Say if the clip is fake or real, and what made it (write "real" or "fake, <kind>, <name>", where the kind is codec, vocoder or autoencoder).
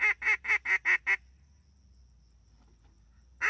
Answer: real